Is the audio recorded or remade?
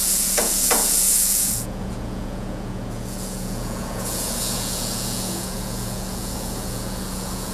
remade